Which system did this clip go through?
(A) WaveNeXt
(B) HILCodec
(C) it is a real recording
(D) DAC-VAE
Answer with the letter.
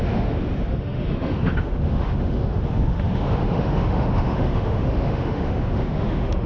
D